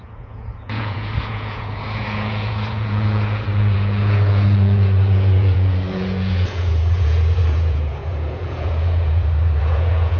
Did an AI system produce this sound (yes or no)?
yes